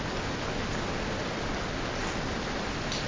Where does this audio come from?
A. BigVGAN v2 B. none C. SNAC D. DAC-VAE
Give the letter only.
B